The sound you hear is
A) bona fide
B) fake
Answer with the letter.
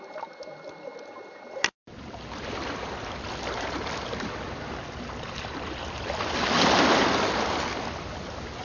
A